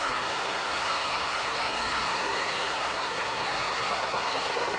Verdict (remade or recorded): remade